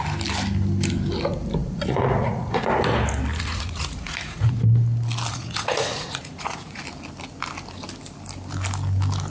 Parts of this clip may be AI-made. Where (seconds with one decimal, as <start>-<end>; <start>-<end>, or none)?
1.6-2.6; 3.3-4.5; 5.3-6.8